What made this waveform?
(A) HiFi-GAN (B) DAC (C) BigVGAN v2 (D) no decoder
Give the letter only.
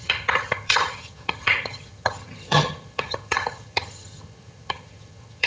A